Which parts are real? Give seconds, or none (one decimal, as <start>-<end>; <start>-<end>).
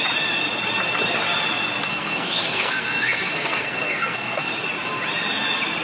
0.0-1.9; 4.5-5.8